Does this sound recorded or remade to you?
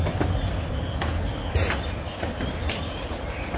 recorded